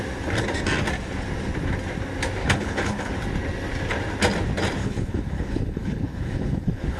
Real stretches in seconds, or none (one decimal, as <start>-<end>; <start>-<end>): 0.0-2.4; 3.1-4.8